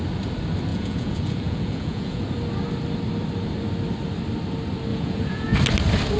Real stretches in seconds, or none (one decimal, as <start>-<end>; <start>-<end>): 0.0-0.7; 2.2-4.9; 5.6-6.2